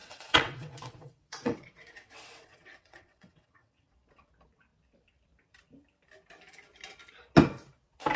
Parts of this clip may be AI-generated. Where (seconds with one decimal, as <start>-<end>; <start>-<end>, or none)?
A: 0.0-3.9